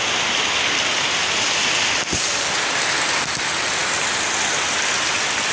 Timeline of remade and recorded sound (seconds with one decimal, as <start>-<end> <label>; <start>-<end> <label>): 0.0-5.5 recorded